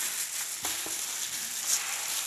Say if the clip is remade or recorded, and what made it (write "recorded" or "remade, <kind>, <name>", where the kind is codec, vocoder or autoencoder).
recorded